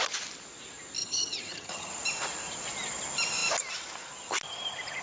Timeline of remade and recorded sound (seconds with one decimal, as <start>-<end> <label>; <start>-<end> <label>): 0.0-1.0 recorded; 1.0-1.9 remade; 1.9-5.0 recorded